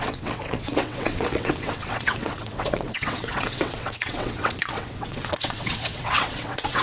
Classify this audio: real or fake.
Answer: fake